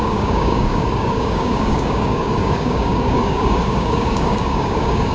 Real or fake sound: fake